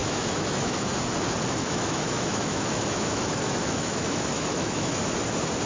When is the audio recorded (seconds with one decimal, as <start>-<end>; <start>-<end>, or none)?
0.9-1.6; 5.0-5.7